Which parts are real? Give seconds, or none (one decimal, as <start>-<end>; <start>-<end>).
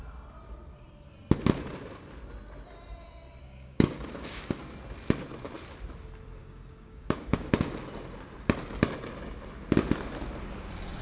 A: 0.0-3.4; 4.6-6.4; 7.5-11.0